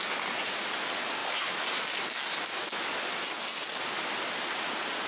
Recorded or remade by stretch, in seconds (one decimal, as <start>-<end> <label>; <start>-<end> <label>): 0.0-5.1 recorded